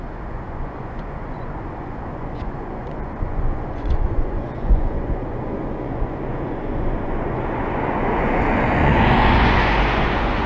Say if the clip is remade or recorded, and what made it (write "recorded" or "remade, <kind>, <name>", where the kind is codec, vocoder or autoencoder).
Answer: remade, vocoder, Vocos